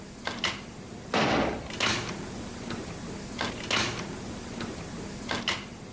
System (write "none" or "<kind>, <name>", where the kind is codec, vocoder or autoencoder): none